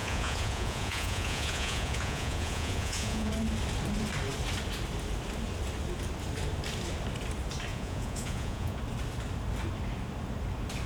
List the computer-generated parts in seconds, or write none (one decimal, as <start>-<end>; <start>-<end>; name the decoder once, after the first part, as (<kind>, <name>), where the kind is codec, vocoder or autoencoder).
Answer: 0.0-3.3 (vocoder, Vocos); 7.7-8.8